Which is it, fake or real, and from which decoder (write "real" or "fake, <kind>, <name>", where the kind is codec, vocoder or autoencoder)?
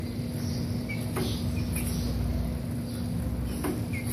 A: real